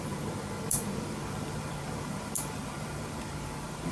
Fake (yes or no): yes